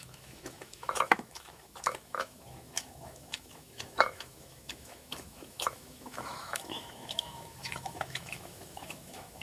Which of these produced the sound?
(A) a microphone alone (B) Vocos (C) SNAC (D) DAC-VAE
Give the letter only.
D